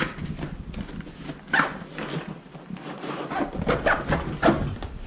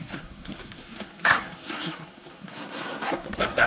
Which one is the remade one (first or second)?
second